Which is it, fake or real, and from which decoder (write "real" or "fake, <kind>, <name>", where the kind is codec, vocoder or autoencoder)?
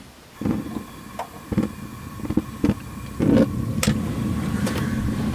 real